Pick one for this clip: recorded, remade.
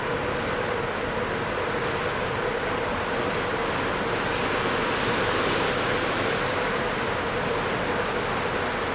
recorded